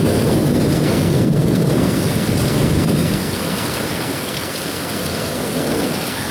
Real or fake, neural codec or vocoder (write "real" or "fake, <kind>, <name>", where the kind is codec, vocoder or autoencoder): fake, codec, SNAC